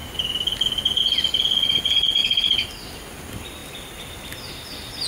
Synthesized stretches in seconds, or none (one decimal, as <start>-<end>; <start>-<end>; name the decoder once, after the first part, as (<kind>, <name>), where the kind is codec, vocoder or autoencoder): none